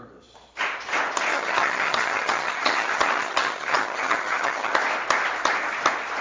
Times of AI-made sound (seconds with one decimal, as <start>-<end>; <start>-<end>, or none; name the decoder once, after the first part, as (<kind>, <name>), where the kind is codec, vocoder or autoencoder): 1.3-4.7 (vocoder, HiFi-GAN)